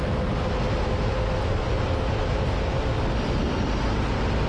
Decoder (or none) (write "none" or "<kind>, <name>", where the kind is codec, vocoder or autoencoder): none